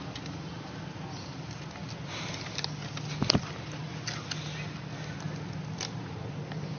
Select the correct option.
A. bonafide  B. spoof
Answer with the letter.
A